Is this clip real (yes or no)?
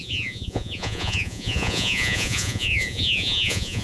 no